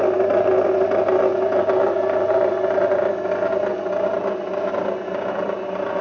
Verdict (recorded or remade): recorded